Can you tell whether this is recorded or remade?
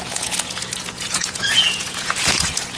remade